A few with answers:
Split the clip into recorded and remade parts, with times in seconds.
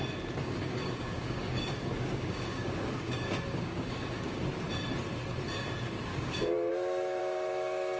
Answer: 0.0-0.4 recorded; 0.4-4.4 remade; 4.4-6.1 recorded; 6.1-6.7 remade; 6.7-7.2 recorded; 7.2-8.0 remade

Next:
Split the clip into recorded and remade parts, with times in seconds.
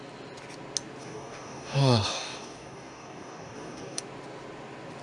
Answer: 0.0-1.0 recorded; 1.0-4.0 remade; 4.0-5.0 recorded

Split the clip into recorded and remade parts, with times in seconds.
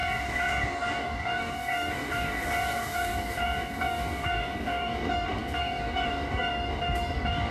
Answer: 0.0-7.5 remade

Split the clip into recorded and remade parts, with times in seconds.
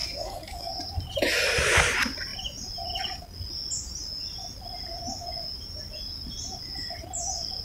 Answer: 0.0-0.7 remade; 0.7-7.6 recorded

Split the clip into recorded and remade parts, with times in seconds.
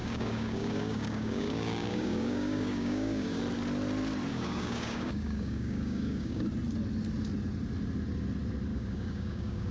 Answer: 0.0-3.4 remade; 3.4-4.3 recorded; 4.3-6.4 remade; 6.4-8.7 recorded; 8.7-9.7 remade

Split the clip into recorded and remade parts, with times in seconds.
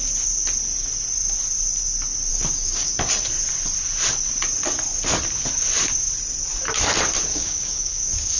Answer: 0.0-2.3 recorded; 2.3-2.9 remade; 2.9-7.3 recorded; 7.3-8.4 remade